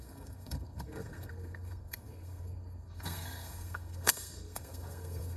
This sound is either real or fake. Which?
fake